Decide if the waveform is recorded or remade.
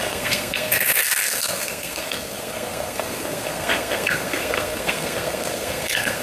remade